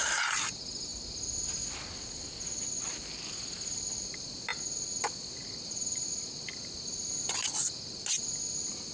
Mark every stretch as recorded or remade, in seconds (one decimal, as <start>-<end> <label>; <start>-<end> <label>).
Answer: 0.0-8.9 recorded